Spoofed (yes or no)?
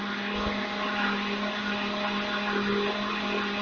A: no